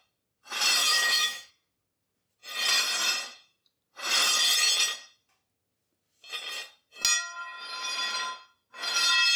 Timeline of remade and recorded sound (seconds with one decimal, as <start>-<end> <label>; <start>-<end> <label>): 0.0-0.8 recorded; 0.8-1.5 remade; 1.5-9.4 recorded